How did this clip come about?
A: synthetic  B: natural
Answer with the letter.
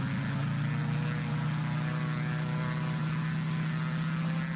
B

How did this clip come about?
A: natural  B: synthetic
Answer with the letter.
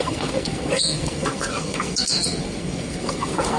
B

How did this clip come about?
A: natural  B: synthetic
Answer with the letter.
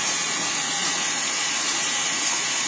B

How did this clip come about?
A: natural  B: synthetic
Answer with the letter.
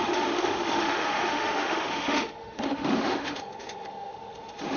B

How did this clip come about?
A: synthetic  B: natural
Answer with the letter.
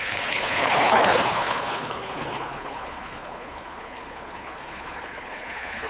A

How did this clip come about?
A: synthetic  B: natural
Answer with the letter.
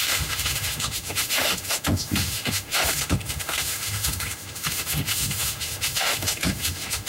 A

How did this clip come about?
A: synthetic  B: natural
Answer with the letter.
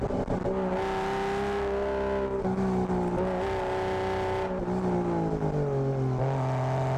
B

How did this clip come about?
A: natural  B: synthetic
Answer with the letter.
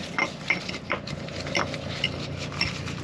A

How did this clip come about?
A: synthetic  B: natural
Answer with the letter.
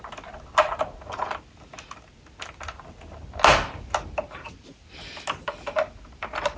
B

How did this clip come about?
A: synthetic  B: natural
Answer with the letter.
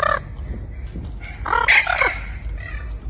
B